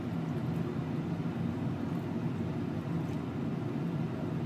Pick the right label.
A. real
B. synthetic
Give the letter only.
A